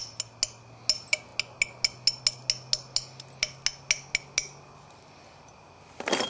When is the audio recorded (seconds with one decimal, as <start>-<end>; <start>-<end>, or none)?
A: 0.0-6.3